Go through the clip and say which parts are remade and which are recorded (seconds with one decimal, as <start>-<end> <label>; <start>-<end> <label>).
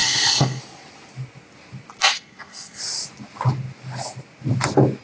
0.0-0.6 remade; 0.6-2.0 recorded; 2.0-2.8 remade; 2.8-5.0 recorded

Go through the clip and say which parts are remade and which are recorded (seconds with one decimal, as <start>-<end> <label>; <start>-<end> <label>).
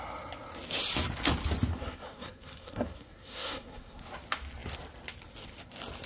0.0-1.7 recorded; 1.7-4.0 remade; 4.0-6.1 recorded